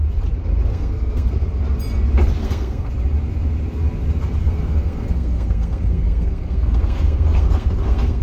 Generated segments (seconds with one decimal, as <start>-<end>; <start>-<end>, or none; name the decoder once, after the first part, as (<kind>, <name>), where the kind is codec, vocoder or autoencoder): 0.7-1.6 (codec, SNAC); 2.4-2.9; 4.4-8.2